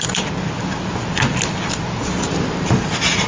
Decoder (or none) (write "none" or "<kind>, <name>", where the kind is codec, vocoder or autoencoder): none